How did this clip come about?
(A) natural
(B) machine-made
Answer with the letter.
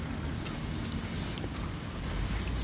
A